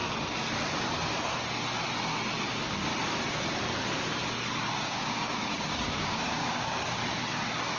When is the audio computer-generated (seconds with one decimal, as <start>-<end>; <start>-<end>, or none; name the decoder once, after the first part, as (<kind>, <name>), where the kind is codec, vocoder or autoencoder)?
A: 2.5-2.9 (codec, DAC); 4.8-7.0